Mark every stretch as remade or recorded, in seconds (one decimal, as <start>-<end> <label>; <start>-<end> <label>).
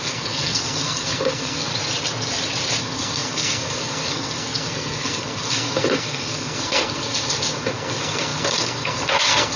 0.0-1.7 remade; 1.7-2.8 recorded; 2.8-9.6 remade